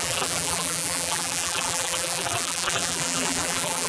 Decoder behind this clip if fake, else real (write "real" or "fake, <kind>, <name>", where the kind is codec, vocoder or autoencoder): fake, vocoder, BigVGAN v2